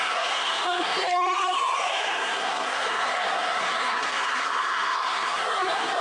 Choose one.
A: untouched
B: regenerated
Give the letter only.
B